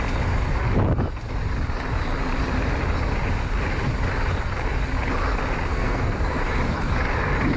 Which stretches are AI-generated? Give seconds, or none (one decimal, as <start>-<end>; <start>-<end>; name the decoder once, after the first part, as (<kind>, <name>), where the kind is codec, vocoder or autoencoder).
5.7-6.4 (codec, SNAC)